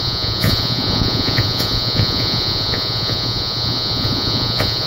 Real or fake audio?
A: fake